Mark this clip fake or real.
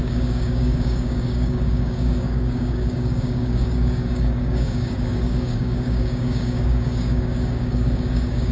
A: fake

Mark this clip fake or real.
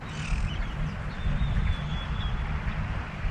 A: real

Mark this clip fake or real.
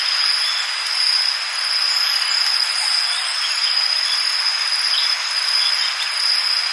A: real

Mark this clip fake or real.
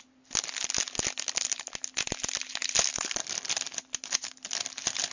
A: real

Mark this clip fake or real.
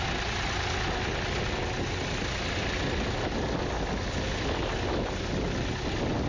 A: real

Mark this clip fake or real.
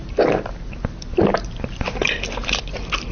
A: real